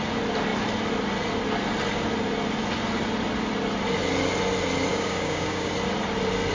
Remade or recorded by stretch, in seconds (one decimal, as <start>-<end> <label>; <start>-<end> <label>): 0.0-4.9 recorded; 4.9-5.7 remade; 5.7-6.5 recorded